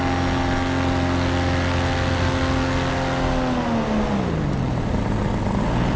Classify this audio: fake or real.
real